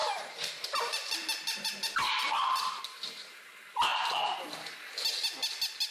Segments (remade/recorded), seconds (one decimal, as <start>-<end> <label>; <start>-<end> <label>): 0.0-2.8 remade; 2.8-3.9 recorded; 3.9-4.4 remade; 4.4-5.9 recorded